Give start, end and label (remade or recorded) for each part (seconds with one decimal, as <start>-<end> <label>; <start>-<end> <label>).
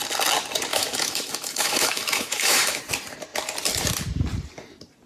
0.0-0.7 recorded; 0.7-2.8 remade; 2.8-5.1 recorded